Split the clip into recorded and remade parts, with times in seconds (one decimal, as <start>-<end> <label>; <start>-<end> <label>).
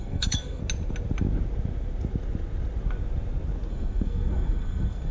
0.0-0.6 remade; 0.6-3.7 recorded; 3.7-5.1 remade